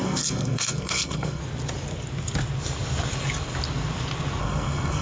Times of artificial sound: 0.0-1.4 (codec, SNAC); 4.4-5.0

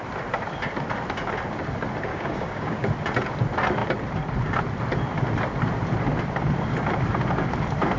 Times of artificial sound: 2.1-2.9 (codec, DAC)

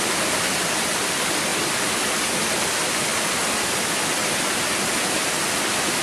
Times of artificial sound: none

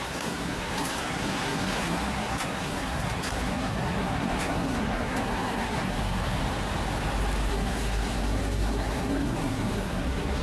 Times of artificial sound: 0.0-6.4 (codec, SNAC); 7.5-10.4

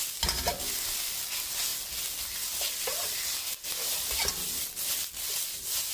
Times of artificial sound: none

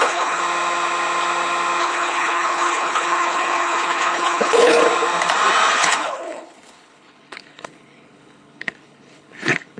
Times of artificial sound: 0.0-0.4 (codec, HILCodec); 1.8-4.8; 5.7-9.8

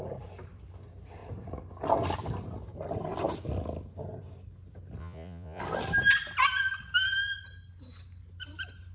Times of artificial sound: 5.0-5.6 (vocoder, Vocos)

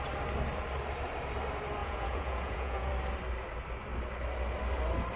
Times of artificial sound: 1.8-2.9 (vocoder, Vocos)